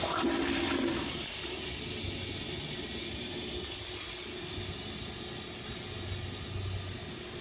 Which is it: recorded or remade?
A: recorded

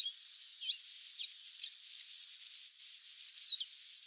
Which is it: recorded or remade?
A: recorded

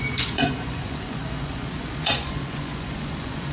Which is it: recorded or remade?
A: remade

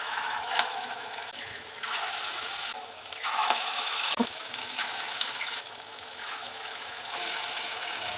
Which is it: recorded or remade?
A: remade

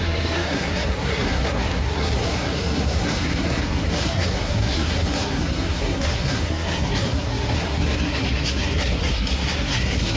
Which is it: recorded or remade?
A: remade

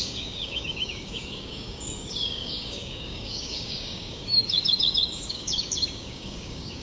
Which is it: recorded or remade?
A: remade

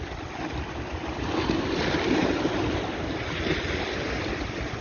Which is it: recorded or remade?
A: recorded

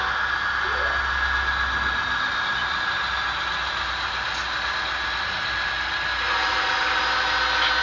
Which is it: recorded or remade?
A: recorded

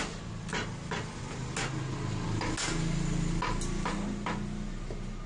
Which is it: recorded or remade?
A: recorded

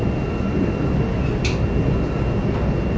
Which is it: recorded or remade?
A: recorded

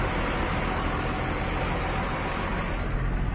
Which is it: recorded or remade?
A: recorded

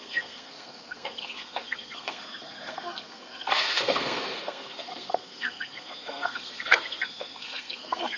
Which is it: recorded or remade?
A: remade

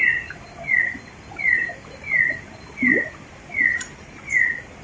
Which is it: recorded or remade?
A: recorded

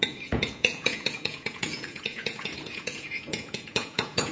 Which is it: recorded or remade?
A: remade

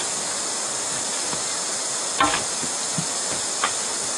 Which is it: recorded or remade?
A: recorded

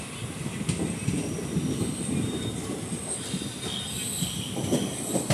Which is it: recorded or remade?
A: recorded